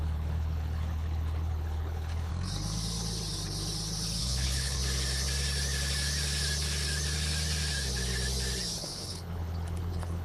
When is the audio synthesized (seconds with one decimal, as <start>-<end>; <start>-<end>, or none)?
0.0-2.3; 4.2-4.8; 8.8-10.2